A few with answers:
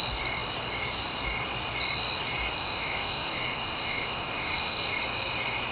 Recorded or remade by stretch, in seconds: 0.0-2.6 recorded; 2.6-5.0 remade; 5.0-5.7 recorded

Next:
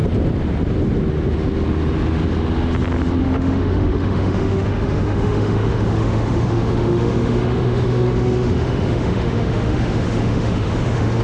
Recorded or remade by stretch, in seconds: 0.0-3.2 recorded; 3.2-11.2 remade

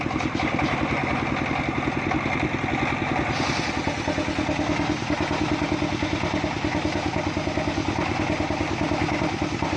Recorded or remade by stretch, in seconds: 0.0-9.8 recorded

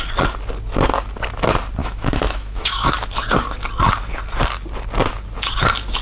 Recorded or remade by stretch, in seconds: 0.0-1.8 recorded; 1.8-2.9 remade; 2.9-6.0 recorded

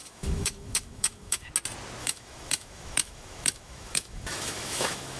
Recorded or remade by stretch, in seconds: 0.0-1.5 remade; 1.5-2.0 recorded; 2.0-5.2 remade

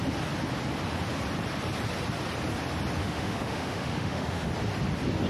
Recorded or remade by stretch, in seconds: 0.0-3.0 recorded; 3.0-4.5 remade; 4.5-5.3 recorded